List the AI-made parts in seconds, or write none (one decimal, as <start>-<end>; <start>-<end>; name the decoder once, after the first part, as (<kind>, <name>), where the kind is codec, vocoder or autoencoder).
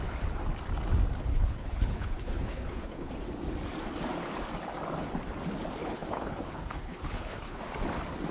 1.3-3.1 (codec, HILCodec); 5.8-7.6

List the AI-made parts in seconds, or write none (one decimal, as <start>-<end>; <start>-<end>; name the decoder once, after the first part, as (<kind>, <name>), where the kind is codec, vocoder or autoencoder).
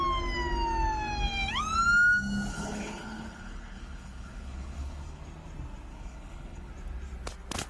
2.5-5.2 (codec, HILCodec); 5.9-6.7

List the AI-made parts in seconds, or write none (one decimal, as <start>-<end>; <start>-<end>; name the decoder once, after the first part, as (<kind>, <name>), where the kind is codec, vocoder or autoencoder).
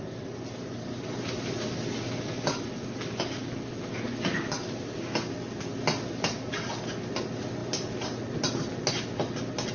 none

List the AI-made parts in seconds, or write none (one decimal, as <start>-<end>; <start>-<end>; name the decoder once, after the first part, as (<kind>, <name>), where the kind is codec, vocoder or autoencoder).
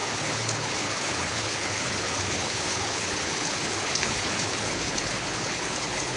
0.0-6.2 (codec, HILCodec)